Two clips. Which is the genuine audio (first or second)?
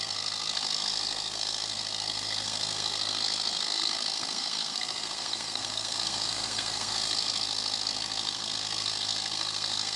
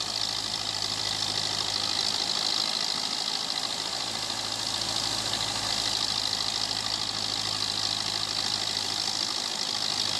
second